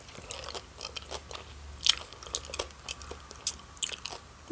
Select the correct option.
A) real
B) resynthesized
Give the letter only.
A